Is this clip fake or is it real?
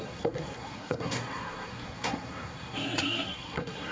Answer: fake